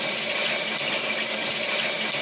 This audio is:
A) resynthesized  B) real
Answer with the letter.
B